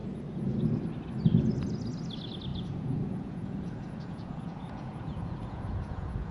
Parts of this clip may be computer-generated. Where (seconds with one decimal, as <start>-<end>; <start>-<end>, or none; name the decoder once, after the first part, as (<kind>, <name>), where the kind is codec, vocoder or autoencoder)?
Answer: 0.0-0.6 (vocoder, Vocos); 2.5-6.3